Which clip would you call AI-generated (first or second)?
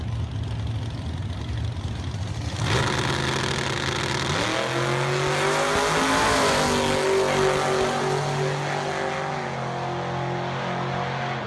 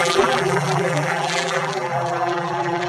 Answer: second